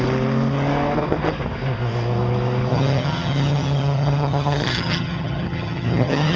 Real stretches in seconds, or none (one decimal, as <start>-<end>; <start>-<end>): 0.0-2.7